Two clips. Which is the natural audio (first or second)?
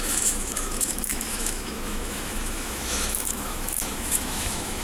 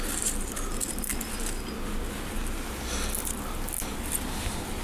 second